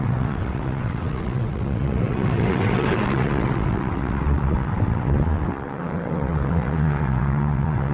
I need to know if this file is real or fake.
fake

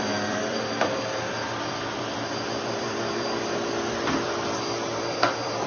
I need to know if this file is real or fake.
fake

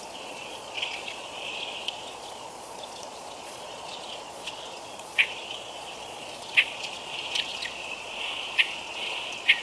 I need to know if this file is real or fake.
fake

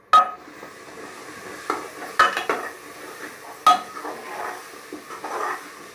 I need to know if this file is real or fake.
real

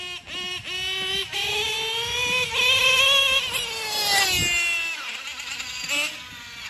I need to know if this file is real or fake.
real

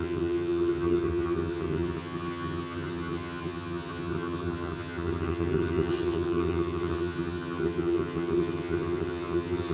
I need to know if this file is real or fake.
fake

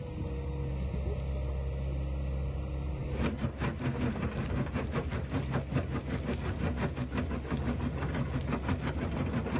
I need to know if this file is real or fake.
real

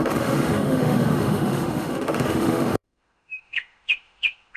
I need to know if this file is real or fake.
fake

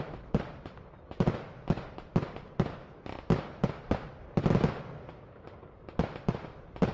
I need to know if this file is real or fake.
real